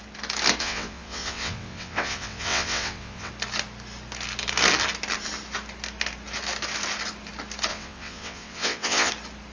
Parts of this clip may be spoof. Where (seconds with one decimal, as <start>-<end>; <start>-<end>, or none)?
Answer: 0.6-3.3; 7.7-9.1